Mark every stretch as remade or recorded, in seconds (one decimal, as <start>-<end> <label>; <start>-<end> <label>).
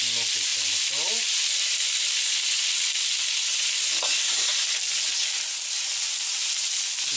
0.0-0.5 recorded; 0.5-4.8 remade; 4.8-5.2 recorded; 5.2-5.9 remade; 5.9-7.2 recorded